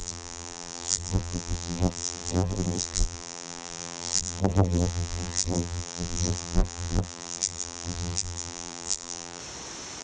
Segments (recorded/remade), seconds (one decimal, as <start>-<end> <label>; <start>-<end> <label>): 0.0-9.4 remade; 9.4-10.0 recorded